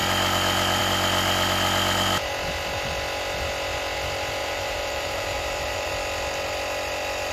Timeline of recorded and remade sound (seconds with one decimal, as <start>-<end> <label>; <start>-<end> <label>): 0.0-4.4 recorded; 4.4-5.9 remade; 5.9-7.3 recorded